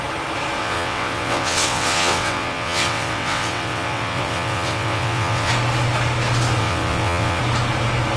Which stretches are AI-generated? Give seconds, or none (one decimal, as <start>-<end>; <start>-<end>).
0.6-5.5; 6.6-7.4